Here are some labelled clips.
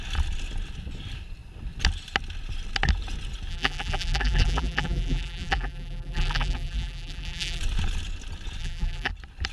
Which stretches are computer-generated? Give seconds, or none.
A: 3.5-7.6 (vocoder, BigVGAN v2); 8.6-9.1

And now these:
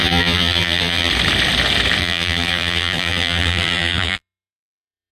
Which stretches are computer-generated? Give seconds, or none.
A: 0.0-1.1 (vocoder, BigVGAN v2); 2.0-5.1

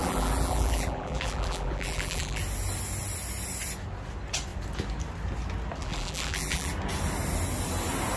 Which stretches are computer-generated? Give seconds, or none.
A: 0.0-2.4 (vocoder, BigVGAN v2); 5.8-6.7

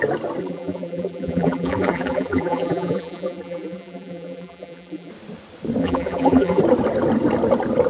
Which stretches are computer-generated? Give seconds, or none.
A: 0.4-5.1 (vocoder, BigVGAN v2); 5.8-6.6

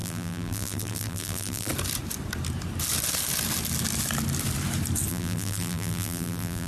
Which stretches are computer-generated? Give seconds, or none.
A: 0.0-1.7 (vocoder, BigVGAN v2); 5.1-6.7